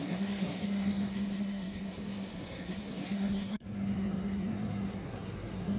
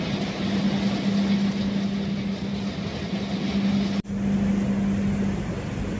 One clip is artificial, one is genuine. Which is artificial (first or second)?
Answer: first